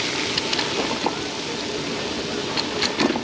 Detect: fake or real real